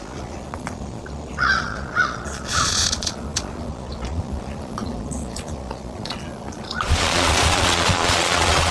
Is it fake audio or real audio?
fake